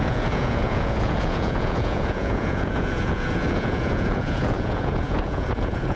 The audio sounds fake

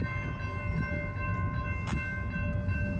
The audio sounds real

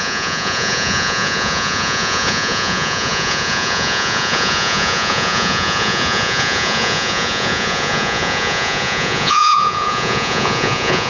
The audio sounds fake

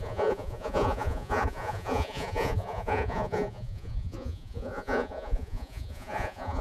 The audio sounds fake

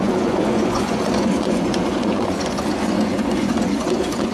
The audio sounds fake